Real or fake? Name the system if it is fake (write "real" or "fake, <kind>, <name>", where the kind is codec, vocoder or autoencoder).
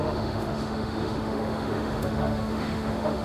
fake, autoencoder, DAC-VAE